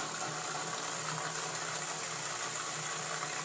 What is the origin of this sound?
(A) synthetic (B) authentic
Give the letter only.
B